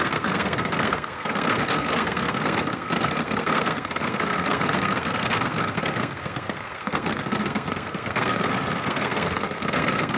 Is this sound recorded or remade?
remade